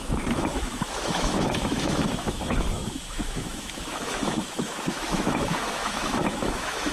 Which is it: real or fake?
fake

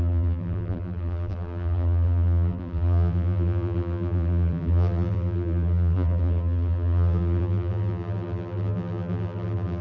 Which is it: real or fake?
fake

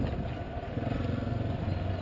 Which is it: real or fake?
real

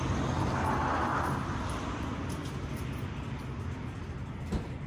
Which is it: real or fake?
real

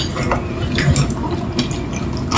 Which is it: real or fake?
real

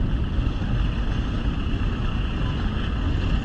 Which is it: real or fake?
real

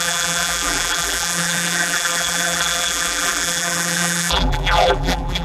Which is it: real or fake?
fake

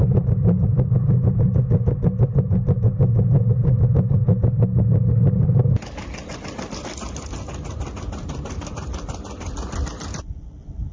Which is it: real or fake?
real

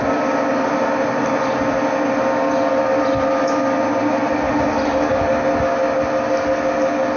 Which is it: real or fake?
real